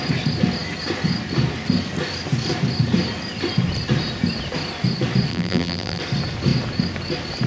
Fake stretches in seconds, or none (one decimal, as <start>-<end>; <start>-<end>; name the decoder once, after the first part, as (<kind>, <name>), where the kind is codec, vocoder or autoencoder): 5.3-6.0 (vocoder, BigVGAN v2)